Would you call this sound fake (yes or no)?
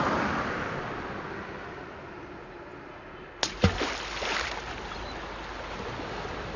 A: no